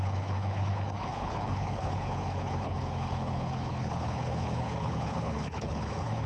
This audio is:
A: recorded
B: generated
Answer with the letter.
B